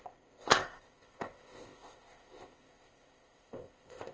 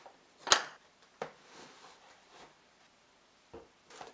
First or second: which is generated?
first